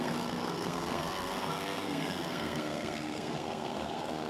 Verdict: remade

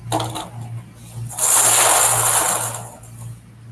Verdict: recorded